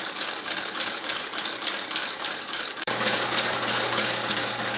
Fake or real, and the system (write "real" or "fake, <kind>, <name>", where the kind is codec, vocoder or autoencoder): fake, codec, DAC